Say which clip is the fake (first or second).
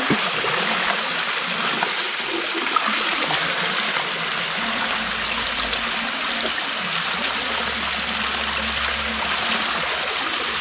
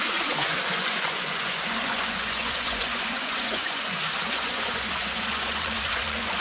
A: second